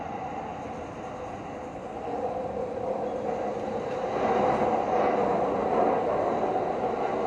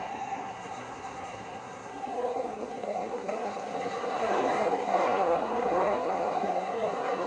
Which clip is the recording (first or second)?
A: first